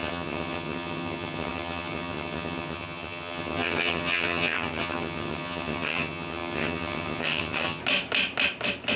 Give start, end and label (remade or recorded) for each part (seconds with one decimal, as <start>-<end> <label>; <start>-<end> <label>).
0.0-7.8 remade; 7.8-9.0 recorded